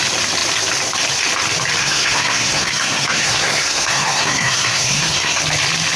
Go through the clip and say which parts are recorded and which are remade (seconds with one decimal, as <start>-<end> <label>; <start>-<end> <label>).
0.0-1.8 recorded; 1.8-5.4 remade; 5.4-6.0 recorded